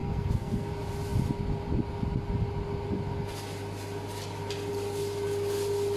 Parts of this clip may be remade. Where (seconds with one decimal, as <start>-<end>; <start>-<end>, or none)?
0.0-0.7